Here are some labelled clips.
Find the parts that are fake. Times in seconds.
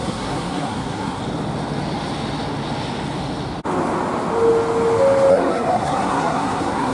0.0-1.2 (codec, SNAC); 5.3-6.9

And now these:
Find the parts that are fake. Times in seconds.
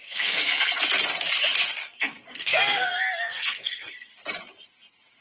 0.0-0.8 (codec, SNAC); 1.8-4.1